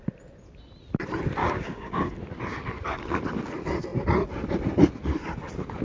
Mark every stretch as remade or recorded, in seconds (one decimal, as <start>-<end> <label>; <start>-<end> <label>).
0.0-1.4 recorded; 1.4-2.1 remade; 2.1-5.8 recorded